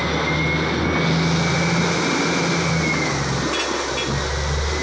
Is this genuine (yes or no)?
yes